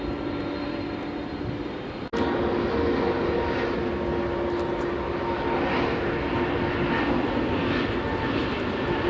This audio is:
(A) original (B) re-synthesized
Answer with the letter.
A